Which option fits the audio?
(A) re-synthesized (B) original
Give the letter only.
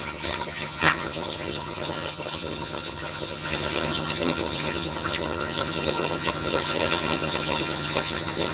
A